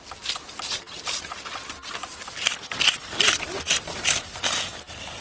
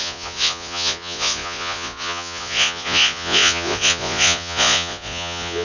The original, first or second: first